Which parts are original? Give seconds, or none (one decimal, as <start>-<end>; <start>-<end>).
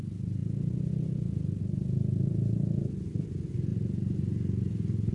0.0-5.1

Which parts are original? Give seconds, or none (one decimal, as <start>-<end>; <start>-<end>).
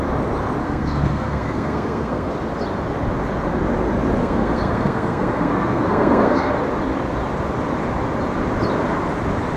0.0-0.6; 2.3-4.2; 6.5-9.6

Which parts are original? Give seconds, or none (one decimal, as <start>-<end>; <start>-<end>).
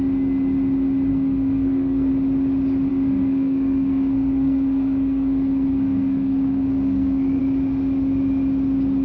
0.0-1.1; 2.1-2.9; 7.4-9.0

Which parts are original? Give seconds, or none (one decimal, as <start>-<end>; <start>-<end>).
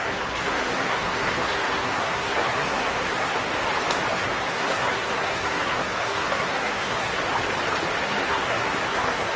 3.5-4.1; 7.2-8.0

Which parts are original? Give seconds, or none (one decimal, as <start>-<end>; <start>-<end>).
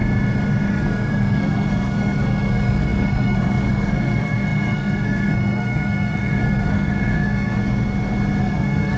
0.0-0.7; 7.6-8.4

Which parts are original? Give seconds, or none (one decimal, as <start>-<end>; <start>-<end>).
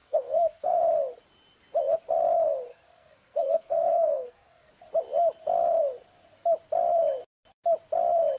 0.8-2.7; 4.7-8.4